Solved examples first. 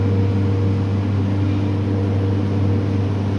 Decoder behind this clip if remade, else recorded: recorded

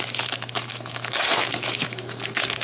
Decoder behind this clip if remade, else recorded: remade, autoencoder, DAC-VAE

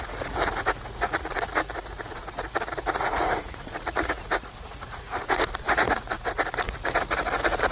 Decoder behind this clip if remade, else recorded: remade, vocoder, Vocos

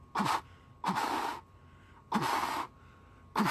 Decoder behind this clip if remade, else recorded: recorded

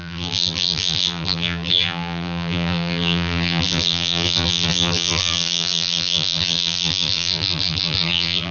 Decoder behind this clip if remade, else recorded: remade, vocoder, BigVGAN v2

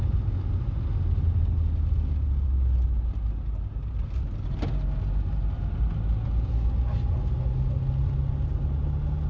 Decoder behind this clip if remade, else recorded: recorded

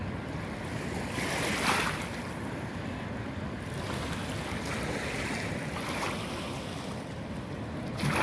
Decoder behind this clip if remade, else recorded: recorded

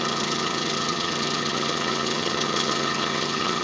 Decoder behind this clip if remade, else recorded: remade, vocoder, HiFi-GAN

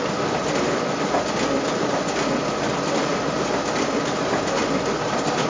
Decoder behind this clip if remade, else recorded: recorded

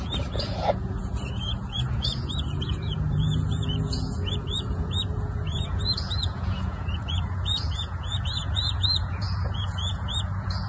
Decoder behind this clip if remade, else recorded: remade, vocoder, Vocos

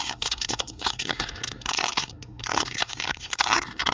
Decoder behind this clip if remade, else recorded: remade, codec, SNAC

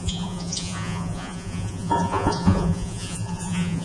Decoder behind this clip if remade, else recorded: remade, vocoder, Vocos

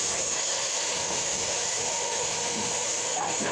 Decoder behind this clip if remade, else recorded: remade, autoencoder, DAC-VAE